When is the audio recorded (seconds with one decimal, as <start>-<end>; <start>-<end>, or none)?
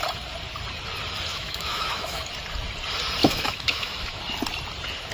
0.0-1.3; 2.3-3.2; 4.2-5.1